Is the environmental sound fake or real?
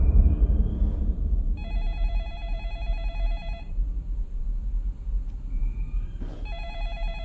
fake